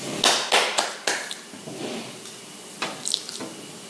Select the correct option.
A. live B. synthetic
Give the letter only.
A